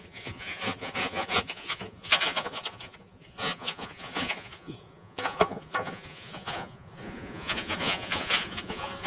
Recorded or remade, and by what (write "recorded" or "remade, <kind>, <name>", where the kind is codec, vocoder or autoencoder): remade, vocoder, Vocos